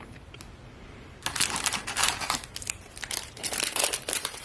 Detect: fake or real fake